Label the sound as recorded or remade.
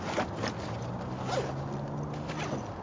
recorded